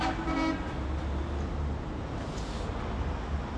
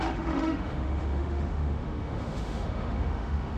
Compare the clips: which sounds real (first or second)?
first